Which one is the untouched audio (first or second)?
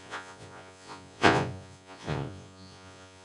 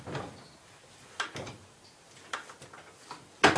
second